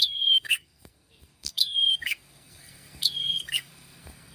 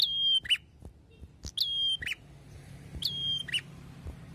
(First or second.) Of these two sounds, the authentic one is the second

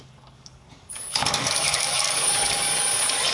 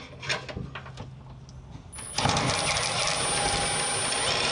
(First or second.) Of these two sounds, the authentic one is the second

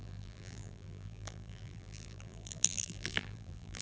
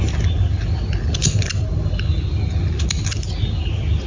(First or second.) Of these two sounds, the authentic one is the second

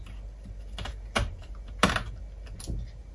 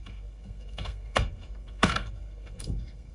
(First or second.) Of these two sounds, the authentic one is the first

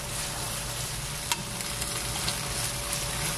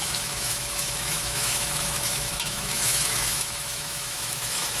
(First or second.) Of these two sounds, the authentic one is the first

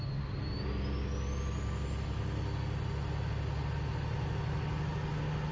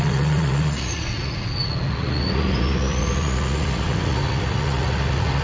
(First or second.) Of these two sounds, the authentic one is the first